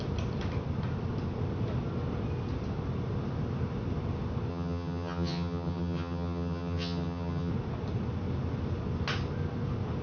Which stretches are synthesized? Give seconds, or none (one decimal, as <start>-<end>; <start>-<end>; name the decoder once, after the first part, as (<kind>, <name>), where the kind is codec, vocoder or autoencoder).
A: 4.5-7.5 (vocoder, HiFi-GAN)